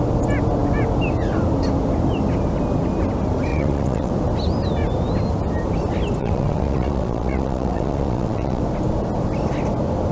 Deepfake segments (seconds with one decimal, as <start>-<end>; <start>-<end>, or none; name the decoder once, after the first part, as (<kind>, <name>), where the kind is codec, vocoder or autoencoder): 3.5-4.1 (vocoder, WaveNeXt); 6.2-8.6